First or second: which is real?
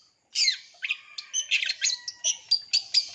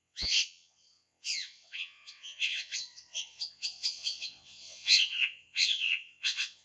first